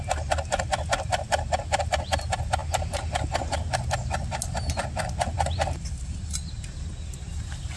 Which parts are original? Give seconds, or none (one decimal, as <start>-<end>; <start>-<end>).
0.0-7.8